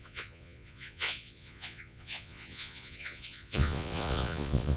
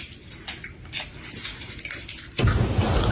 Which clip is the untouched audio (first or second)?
second